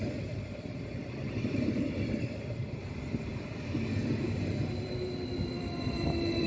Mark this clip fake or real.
fake